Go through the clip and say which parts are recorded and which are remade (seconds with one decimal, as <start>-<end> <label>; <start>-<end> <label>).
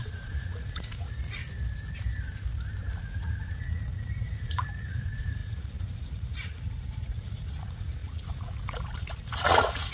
0.0-1.4 remade; 1.4-2.9 recorded; 2.9-9.9 remade